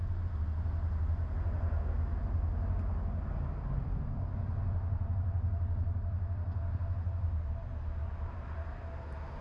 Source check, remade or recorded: recorded